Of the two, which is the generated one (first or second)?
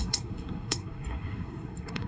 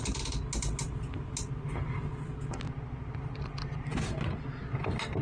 first